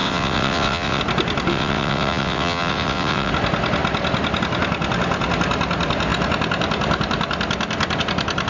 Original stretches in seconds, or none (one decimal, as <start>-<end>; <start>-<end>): 1.0-1.5; 3.3-8.5